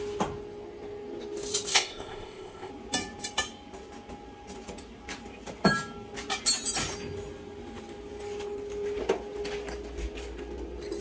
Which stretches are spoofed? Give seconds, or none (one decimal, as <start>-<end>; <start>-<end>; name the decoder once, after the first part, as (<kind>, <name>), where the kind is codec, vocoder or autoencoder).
1.7-2.7 (codec, ZipCodec)